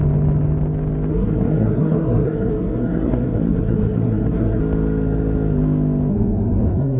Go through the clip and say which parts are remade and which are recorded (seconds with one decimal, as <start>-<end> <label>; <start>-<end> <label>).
0.0-1.1 recorded; 1.1-4.6 remade; 4.6-6.1 recorded; 6.1-7.0 remade